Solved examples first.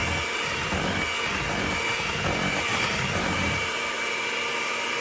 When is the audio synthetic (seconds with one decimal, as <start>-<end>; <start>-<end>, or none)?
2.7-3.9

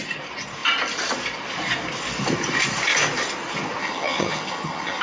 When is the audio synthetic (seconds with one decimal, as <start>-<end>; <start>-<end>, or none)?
3.8-5.0

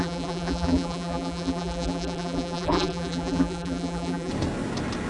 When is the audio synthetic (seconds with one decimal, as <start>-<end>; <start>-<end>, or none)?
0.0-4.3

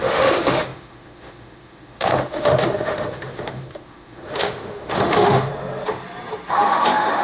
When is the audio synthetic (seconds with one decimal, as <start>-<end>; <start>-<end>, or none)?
0.0-5.5; 6.5-7.2

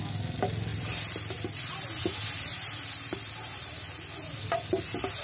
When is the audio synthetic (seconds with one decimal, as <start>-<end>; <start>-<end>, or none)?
0.7-3.3

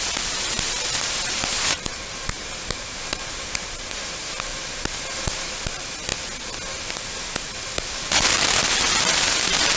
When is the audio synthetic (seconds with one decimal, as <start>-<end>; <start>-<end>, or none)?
0.0-6.1; 7.2-9.8

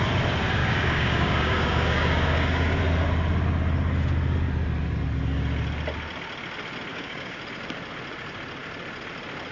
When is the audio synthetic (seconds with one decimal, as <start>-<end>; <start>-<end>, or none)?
0.6-2.8; 6.9-7.4

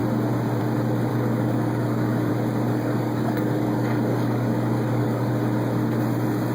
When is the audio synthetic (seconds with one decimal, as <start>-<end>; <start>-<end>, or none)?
1.1-2.3; 2.7-5.3